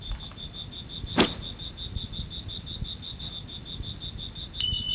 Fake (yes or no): no